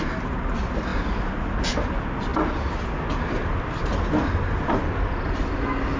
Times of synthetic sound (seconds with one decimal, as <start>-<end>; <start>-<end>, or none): none